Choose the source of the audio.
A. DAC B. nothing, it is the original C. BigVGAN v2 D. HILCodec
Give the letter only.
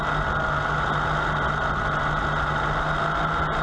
B